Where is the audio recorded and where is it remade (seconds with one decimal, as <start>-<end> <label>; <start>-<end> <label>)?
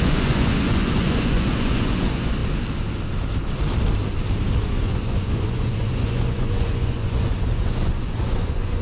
0.0-2.4 remade; 2.4-4.6 recorded; 4.6-8.8 remade